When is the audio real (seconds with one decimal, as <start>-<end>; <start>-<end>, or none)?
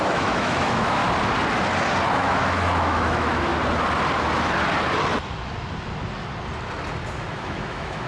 1.0-2.1; 3.5-7.3